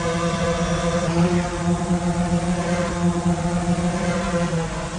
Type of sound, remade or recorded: remade